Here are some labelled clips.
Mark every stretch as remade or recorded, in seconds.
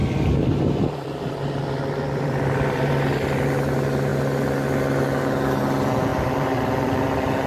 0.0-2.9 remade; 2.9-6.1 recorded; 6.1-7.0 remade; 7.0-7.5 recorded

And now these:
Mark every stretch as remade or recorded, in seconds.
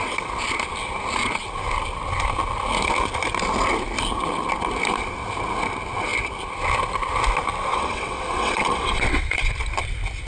0.0-7.7 recorded; 7.7-9.6 remade; 9.6-10.3 recorded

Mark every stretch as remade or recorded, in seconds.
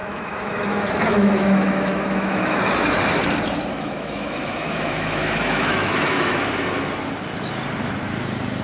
0.0-2.7 remade; 2.7-3.7 recorded; 3.7-6.5 remade; 6.5-8.6 recorded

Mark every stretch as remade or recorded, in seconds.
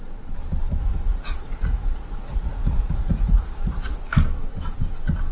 0.0-0.8 recorded; 0.8-4.0 remade; 4.0-5.3 recorded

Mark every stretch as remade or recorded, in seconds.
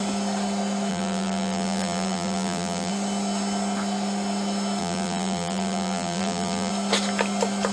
0.0-0.9 recorded; 0.9-2.9 remade; 2.9-4.8 recorded; 4.8-6.7 remade; 6.7-7.7 recorded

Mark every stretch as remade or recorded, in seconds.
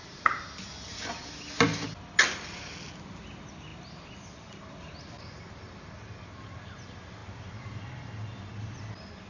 0.0-1.3 remade; 1.3-9.3 recorded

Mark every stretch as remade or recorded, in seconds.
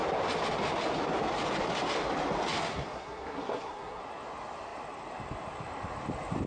0.0-2.7 recorded; 2.7-4.0 remade; 4.0-6.5 recorded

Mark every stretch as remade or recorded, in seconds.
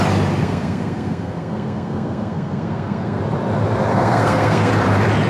0.0-0.4 recorded; 0.4-3.2 remade; 3.2-3.9 recorded; 3.9-4.7 remade; 4.7-5.3 recorded